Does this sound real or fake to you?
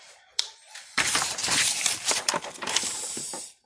fake